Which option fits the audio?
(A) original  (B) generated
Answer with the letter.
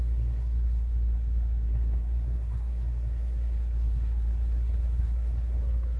B